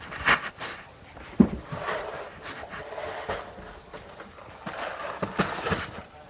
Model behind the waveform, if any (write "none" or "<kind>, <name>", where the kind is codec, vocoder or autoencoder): none